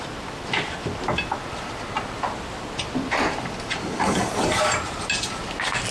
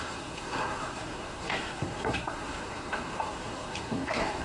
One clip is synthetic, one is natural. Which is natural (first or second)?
first